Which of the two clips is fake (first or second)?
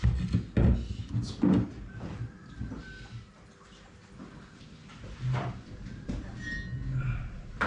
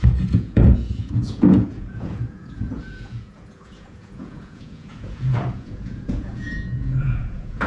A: second